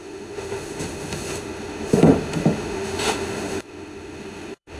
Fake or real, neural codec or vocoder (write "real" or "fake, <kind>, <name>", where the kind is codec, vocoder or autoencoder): fake, autoencoder, DAC-VAE